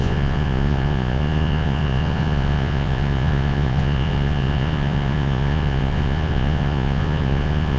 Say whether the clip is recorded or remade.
remade